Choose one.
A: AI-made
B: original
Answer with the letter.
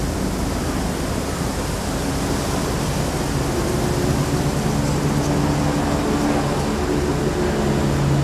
B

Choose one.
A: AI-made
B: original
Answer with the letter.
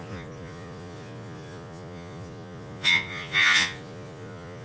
A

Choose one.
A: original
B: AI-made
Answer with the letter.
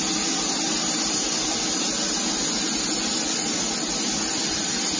A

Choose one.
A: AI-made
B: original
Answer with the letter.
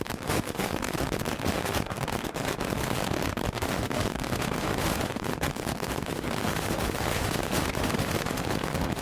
A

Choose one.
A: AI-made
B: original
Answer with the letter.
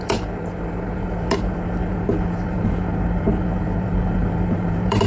A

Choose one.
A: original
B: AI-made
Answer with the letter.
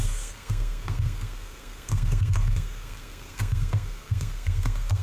B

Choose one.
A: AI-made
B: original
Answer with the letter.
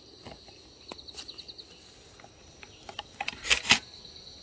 B